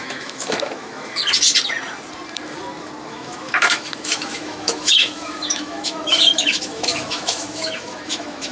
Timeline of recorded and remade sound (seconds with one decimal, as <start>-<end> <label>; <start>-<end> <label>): 0.0-1.2 remade; 1.2-3.1 recorded; 3.1-8.5 remade

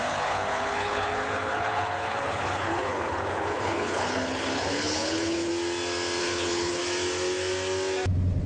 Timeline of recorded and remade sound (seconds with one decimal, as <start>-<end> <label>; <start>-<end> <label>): 0.0-5.5 remade; 5.5-6.2 recorded; 6.2-6.8 remade; 6.8-8.5 recorded

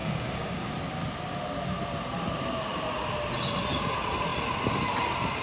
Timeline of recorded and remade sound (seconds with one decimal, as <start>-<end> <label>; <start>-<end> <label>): 0.0-0.6 remade; 0.6-5.4 recorded

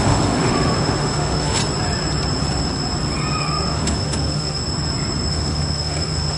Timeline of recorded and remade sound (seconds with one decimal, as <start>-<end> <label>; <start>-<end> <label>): 0.0-1.6 remade; 1.6-3.4 recorded; 3.4-4.6 remade; 4.6-5.3 recorded; 5.3-6.4 remade

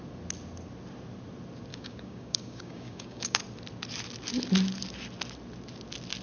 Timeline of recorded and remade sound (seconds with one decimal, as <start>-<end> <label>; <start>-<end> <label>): 0.0-1.7 recorded; 1.7-3.4 remade; 3.4-6.2 recorded

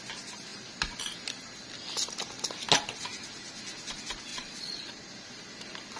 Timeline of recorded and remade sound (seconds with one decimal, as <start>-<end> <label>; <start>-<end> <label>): 0.0-4.3 recorded; 4.3-4.9 remade; 4.9-6.0 recorded